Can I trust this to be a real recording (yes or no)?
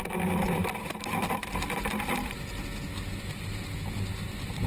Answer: no